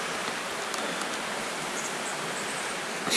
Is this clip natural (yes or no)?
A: yes